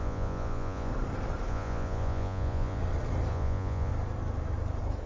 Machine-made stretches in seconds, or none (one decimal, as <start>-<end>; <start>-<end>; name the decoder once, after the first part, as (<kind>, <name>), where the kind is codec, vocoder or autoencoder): 0.0-0.9 (vocoder, Vocos); 1.5-2.8; 3.3-3.9